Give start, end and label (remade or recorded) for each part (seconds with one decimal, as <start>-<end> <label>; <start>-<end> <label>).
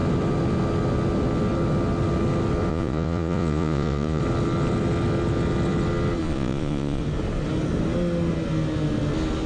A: 0.0-2.7 recorded; 2.7-4.2 remade; 4.2-6.2 recorded; 6.2-7.0 remade; 7.0-9.5 recorded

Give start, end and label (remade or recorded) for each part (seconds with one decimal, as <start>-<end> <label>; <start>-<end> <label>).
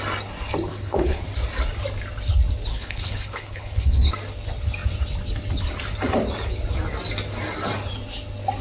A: 0.0-0.7 recorded; 0.7-1.2 remade; 1.2-2.7 recorded; 2.7-4.1 remade; 4.1-8.6 recorded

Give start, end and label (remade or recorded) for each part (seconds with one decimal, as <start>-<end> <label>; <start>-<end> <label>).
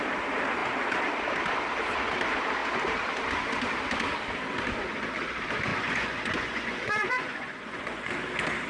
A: 0.0-5.7 recorded; 5.7-8.1 remade; 8.1-8.7 recorded